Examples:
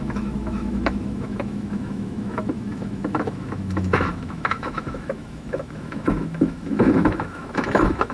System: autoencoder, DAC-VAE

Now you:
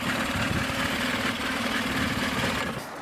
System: none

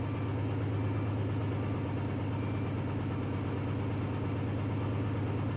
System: none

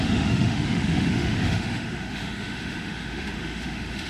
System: autoencoder, DAC-VAE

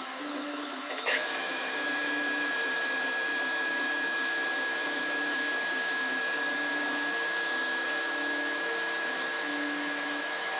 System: autoencoder, DAC-VAE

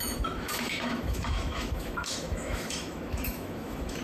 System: autoencoder, DAC-VAE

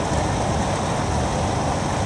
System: none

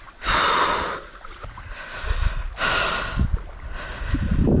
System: none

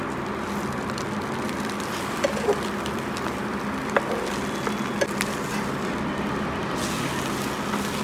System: none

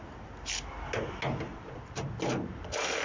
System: none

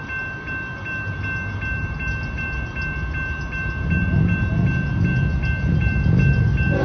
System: none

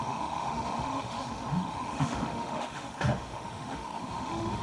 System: autoencoder, DAC-VAE